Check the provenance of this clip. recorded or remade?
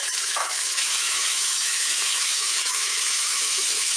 remade